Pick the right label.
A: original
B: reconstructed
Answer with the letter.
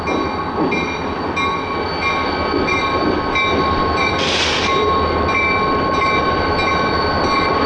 A